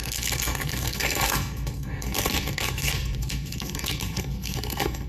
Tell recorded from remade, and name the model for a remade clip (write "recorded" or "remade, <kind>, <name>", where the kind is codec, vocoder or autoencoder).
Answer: remade, codec, SNAC